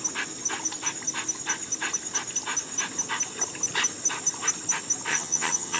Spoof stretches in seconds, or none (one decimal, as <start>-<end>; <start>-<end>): 5.1-5.8